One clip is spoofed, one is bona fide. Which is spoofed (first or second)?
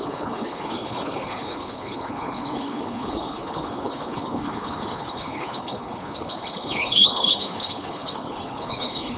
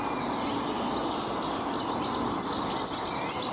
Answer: first